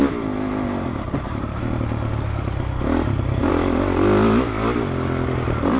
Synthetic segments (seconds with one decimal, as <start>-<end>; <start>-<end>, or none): none